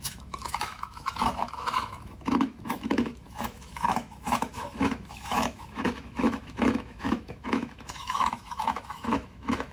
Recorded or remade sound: remade